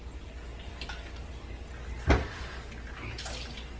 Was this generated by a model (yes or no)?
no